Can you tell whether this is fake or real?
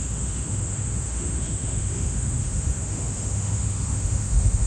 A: fake